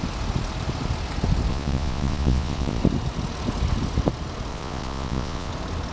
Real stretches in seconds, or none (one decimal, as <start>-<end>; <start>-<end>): 0.0-1.5; 2.8-4.5; 5.5-5.9